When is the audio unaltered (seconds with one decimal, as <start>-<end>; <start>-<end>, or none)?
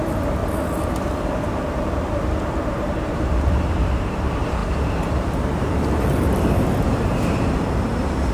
0.4-0.9; 4.6-5.1